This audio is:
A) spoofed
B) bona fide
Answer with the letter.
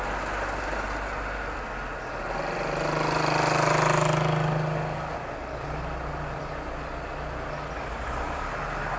B